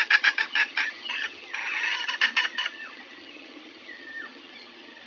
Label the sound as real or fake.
fake